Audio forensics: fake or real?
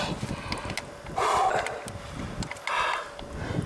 real